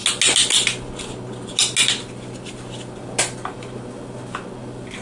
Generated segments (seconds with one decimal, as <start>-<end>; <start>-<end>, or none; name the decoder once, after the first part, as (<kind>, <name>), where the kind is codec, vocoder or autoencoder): none